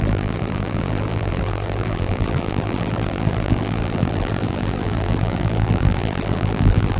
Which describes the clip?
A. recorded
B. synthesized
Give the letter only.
B